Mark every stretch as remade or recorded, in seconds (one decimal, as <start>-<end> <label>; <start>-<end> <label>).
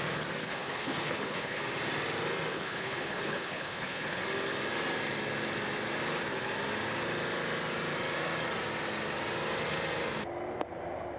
0.0-0.4 recorded; 0.4-1.6 remade; 1.6-2.5 recorded; 2.5-4.2 remade; 4.2-11.2 recorded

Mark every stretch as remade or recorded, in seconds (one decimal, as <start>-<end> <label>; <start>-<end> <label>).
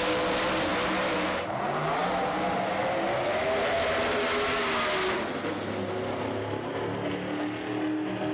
0.0-8.3 recorded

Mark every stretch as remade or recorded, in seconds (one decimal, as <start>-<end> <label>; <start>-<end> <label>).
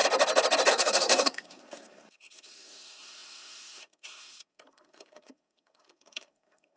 0.0-0.7 recorded; 0.7-6.8 remade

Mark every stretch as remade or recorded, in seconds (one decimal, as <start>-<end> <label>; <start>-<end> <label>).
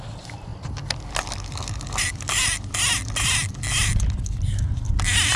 0.0-0.5 remade; 0.5-2.0 recorded; 2.0-2.9 remade; 2.9-3.7 recorded; 3.7-5.4 remade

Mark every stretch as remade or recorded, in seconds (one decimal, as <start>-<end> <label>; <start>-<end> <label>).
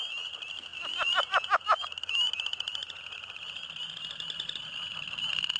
0.0-5.6 recorded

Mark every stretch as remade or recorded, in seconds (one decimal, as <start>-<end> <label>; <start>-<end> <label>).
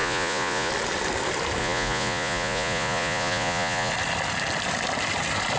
0.0-0.7 remade; 0.7-1.6 recorded; 1.6-3.9 remade; 3.9-5.6 recorded